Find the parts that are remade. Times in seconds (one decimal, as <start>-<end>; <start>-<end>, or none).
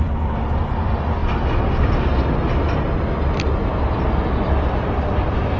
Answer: none